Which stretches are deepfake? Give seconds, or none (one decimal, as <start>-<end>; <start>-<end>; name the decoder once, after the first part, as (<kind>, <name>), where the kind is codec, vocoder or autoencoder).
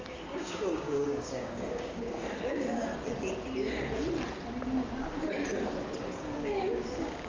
0.0-2.9 (codec, DAC); 6.1-7.3